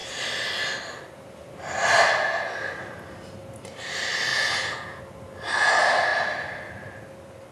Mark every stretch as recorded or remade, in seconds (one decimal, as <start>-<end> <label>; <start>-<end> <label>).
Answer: 0.0-4.3 recorded; 4.3-5.0 remade; 5.0-7.5 recorded